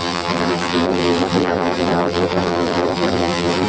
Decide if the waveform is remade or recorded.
remade